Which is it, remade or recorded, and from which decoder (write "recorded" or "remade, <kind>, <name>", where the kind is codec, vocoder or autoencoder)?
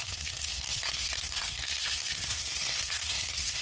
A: remade, codec, SNAC